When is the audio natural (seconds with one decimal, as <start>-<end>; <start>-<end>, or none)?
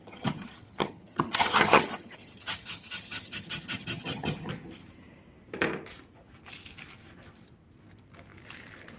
4.5-9.0